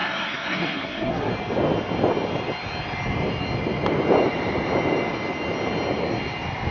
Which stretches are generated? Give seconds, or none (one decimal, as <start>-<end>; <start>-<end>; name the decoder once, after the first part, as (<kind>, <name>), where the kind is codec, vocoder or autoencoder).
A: 0.0-1.3 (codec, SNAC)